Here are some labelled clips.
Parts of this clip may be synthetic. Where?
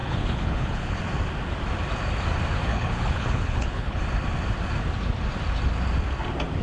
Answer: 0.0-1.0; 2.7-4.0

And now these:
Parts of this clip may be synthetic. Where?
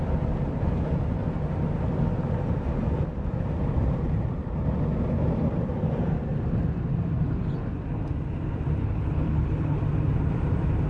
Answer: 8.8-9.8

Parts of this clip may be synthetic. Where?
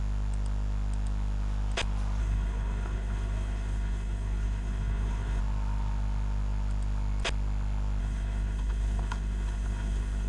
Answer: 2.2-5.4; 8.0-10.3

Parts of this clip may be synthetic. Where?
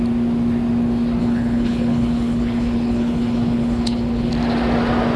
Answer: 1.2-4.3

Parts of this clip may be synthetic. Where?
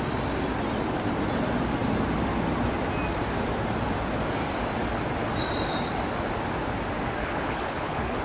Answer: 7.2-8.2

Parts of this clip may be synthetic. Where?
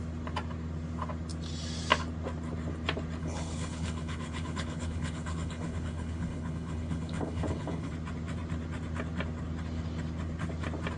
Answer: 3.2-7.9